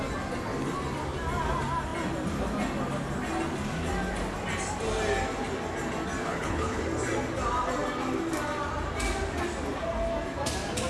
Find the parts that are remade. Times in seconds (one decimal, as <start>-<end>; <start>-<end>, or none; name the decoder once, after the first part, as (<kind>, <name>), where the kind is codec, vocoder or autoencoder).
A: 6.2-6.8 (codec, HILCodec)